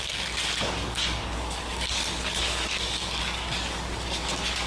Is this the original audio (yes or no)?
no